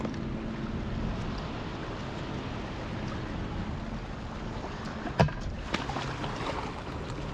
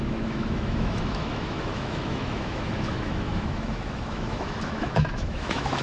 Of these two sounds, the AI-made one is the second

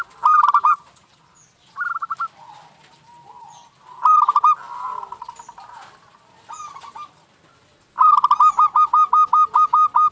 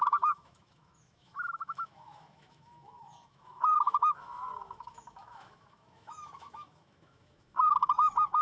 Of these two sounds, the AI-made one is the second